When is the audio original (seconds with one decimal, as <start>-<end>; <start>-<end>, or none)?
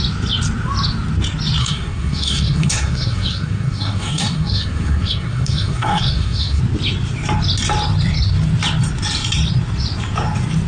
0.0-1.6; 6.6-10.7